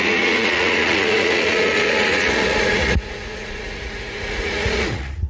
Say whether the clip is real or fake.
fake